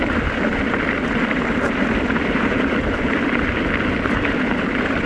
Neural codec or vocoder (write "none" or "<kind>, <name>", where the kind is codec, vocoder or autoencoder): none